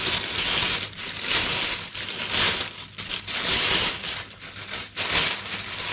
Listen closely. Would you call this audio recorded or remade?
recorded